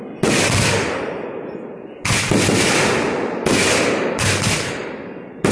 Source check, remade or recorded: recorded